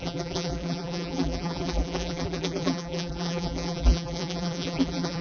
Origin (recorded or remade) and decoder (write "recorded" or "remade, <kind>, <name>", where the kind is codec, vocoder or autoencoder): remade, vocoder, BigVGAN v2